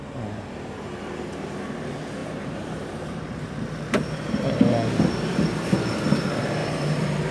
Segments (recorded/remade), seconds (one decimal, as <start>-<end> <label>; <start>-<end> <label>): 0.0-2.2 recorded; 2.2-5.9 remade; 5.9-6.6 recorded; 6.6-7.3 remade